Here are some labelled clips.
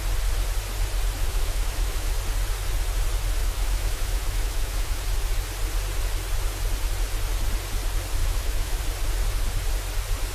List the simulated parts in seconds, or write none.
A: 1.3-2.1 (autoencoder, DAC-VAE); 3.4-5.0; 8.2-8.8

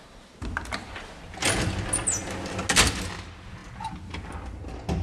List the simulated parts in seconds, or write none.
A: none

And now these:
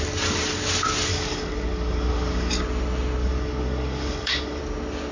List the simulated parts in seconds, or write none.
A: 1.1-2.6 (codec, DAC); 3.2-4.6

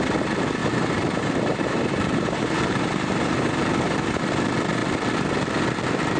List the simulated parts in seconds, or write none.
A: 0.6-4.3 (vocoder, BigVGAN v2)